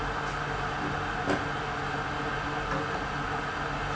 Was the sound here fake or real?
real